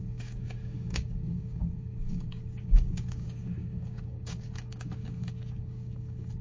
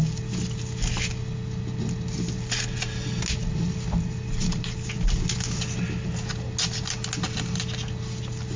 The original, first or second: second